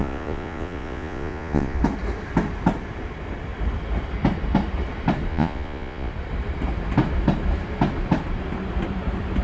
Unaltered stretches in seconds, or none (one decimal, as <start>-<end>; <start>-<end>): 1.8-5.3; 6.1-9.4